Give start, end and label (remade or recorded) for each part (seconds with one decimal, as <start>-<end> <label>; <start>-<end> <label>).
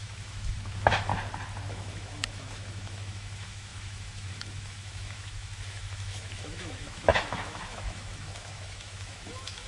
0.0-1.1 remade; 1.1-1.7 recorded; 1.7-9.7 remade